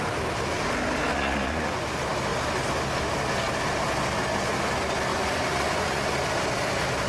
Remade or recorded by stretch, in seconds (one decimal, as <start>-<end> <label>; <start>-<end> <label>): 0.0-1.1 recorded; 1.1-1.9 remade; 1.9-5.1 recorded; 5.1-6.1 remade; 6.1-7.1 recorded